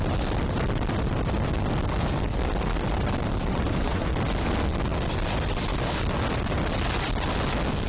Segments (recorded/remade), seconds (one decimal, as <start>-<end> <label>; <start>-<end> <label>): 0.0-3.5 recorded; 3.5-4.1 remade; 4.1-7.9 recorded